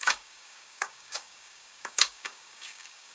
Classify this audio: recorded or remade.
remade